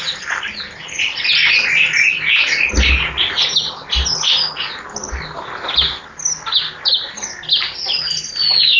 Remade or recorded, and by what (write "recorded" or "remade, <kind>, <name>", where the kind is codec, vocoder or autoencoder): recorded